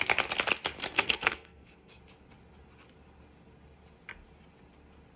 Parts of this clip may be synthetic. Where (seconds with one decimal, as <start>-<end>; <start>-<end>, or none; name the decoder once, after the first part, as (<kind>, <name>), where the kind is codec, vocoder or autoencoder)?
0.8-2.0 (codec, SNAC)